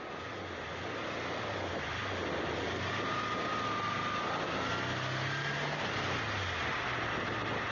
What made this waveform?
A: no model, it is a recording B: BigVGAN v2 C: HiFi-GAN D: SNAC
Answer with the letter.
A